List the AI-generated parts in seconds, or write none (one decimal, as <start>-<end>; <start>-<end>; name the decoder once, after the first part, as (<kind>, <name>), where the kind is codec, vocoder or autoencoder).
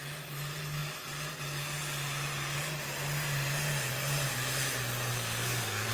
5.1-5.9 (codec, SNAC)